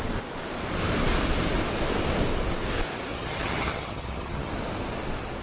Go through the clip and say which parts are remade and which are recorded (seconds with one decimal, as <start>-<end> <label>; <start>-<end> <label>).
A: 0.0-3.1 recorded; 3.1-4.5 remade; 4.5-5.4 recorded